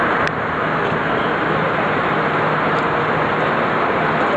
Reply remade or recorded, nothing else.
recorded